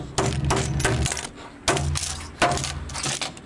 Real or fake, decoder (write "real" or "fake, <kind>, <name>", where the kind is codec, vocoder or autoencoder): real